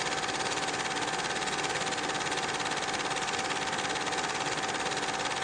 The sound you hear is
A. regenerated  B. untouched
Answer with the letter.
B